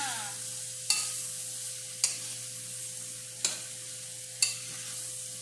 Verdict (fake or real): real